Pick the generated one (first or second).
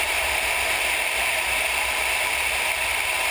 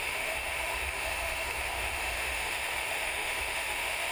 second